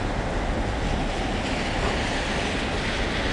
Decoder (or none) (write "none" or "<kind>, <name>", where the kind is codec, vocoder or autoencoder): none